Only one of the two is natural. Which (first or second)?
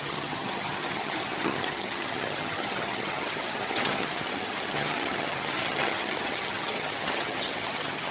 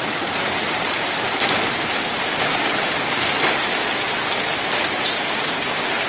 second